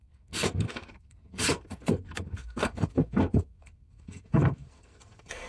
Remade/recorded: remade